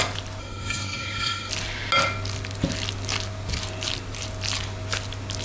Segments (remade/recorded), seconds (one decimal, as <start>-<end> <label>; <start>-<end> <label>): 0.0-0.4 recorded; 0.4-1.5 remade; 1.5-5.4 recorded